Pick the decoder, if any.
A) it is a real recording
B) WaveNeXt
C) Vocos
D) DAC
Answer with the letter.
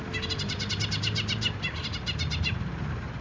A